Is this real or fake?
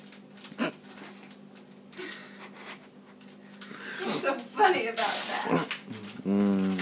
real